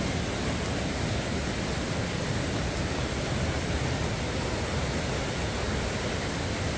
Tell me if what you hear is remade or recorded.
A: recorded